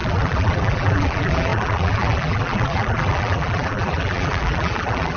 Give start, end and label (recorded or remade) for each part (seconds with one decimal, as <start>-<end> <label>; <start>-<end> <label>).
0.0-5.2 remade